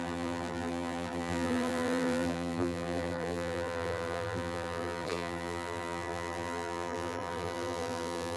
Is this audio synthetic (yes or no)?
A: yes